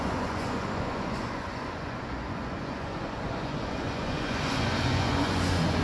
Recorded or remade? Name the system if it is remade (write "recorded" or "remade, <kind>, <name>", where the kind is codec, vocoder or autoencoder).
remade, vocoder, Vocos